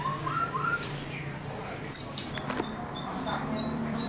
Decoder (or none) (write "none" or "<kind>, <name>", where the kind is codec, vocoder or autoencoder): vocoder, BigVGAN v2